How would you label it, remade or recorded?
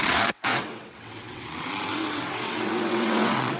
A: remade